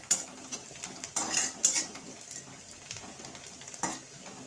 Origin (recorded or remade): recorded